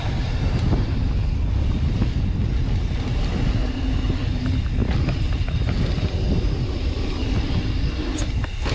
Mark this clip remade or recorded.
recorded